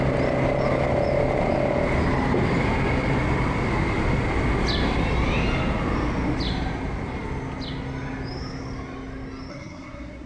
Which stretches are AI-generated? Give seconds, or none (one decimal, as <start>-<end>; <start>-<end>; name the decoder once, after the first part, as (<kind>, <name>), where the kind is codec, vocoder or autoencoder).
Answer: 9.5-10.3 (codec, SNAC)